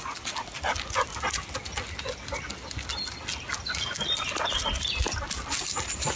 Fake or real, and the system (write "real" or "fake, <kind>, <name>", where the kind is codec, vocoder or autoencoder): real